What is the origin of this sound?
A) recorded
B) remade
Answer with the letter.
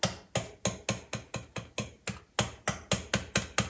A